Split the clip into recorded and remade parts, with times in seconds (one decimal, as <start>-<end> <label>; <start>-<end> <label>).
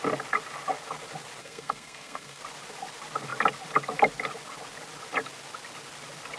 0.0-1.4 recorded; 1.4-2.4 remade; 2.4-6.4 recorded